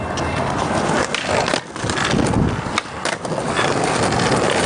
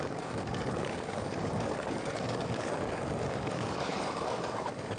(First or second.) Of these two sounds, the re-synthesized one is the second